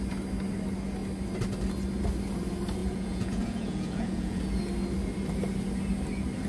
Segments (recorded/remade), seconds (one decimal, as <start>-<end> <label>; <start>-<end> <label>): 0.0-2.8 recorded; 2.8-4.4 remade; 4.4-6.5 recorded